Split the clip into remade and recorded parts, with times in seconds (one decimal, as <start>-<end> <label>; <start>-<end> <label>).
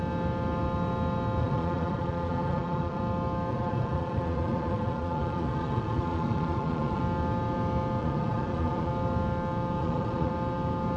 0.0-1.4 recorded; 1.4-3.0 remade; 3.0-3.5 recorded; 3.5-7.0 remade; 7.0-8.0 recorded; 8.0-8.9 remade; 8.9-9.8 recorded; 9.8-10.3 remade; 10.3-11.0 recorded